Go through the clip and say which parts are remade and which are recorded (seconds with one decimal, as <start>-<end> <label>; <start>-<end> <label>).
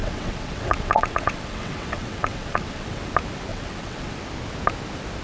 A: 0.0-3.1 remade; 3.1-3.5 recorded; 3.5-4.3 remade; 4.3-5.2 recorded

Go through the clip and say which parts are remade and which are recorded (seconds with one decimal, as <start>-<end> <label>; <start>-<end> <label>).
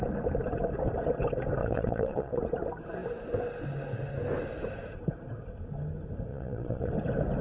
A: 0.0-1.6 recorded; 1.6-2.4 remade; 2.4-6.3 recorded; 6.3-6.9 remade; 6.9-7.4 recorded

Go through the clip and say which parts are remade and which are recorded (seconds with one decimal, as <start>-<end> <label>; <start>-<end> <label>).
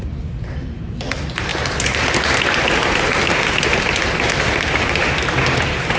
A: 0.0-6.0 recorded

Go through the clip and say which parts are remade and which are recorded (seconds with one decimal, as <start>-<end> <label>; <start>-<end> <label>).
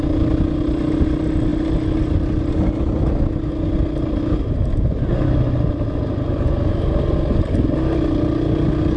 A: 0.0-9.0 recorded